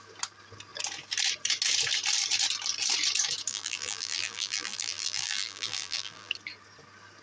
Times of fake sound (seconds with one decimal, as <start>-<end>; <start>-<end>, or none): 3.5-6.3